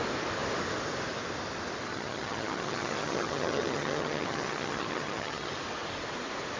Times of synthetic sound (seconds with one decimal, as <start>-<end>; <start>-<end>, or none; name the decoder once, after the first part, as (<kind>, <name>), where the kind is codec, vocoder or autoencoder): 1.9-5.5 (vocoder, HiFi-GAN)